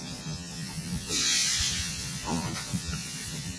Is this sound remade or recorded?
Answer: remade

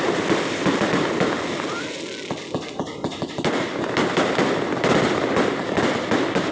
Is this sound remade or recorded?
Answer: recorded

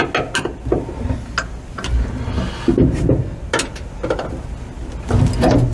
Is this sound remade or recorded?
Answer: recorded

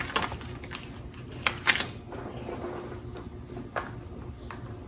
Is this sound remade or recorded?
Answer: recorded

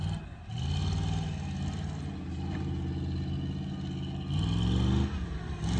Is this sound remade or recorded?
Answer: recorded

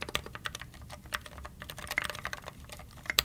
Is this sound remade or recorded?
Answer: recorded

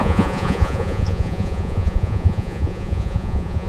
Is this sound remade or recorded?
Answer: remade